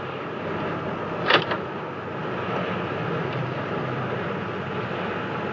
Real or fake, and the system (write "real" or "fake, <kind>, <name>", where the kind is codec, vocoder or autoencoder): real